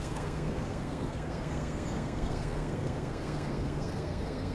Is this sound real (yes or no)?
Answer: no